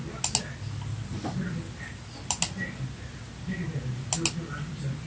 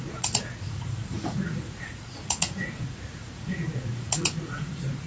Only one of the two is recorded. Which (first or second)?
first